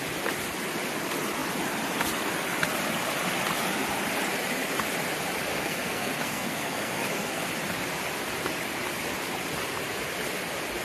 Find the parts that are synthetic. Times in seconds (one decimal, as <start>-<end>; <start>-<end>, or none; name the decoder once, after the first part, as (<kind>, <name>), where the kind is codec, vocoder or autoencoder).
5.5-7.5 (codec, SNAC)